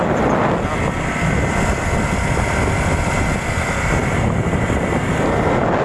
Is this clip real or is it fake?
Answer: real